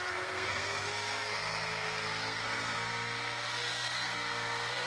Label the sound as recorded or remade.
remade